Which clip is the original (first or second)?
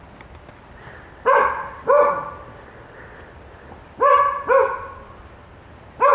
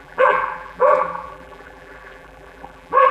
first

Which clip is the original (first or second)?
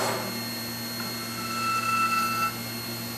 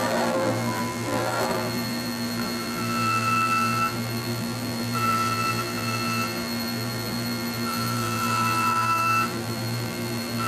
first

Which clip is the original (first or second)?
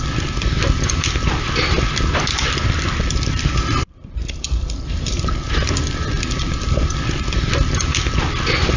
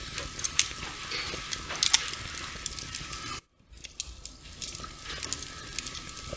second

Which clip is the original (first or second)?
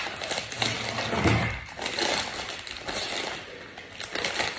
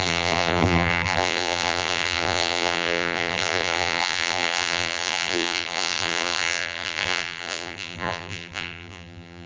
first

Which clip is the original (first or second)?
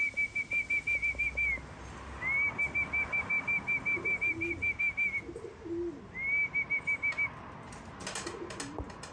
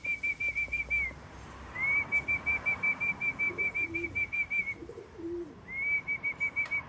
first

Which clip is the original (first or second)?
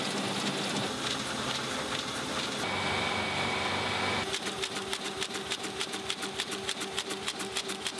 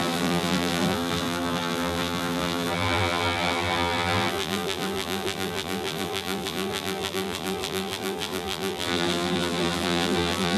first